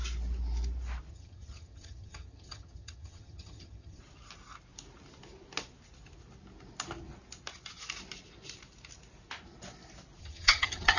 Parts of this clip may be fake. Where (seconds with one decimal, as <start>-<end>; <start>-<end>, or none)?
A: 1.1-4.0; 10.2-11.0